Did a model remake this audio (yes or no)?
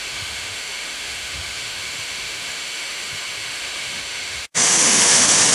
yes